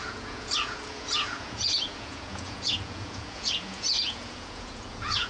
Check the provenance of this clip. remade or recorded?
remade